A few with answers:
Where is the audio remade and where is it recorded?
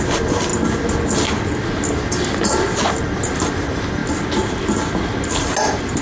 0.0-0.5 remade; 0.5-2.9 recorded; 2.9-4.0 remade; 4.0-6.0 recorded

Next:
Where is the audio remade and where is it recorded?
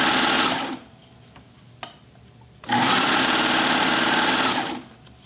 0.0-5.3 recorded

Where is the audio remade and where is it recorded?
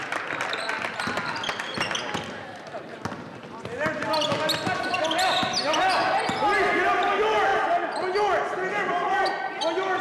0.0-10.0 recorded